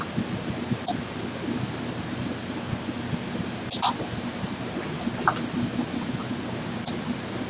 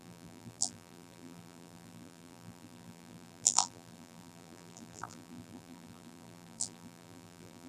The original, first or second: first